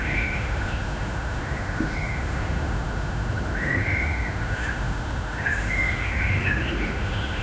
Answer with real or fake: fake